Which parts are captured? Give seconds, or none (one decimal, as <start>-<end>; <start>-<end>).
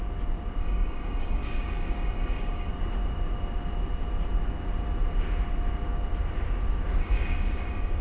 0.0-0.6; 2.7-7.0